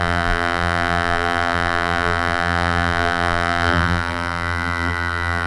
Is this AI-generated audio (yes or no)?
yes